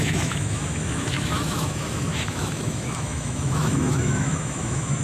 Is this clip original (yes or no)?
no